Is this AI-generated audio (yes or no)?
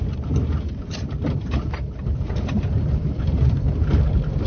yes